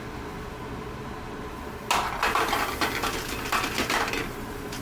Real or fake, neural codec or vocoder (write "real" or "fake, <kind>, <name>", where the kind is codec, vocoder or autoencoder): real